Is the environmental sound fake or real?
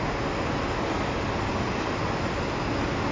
real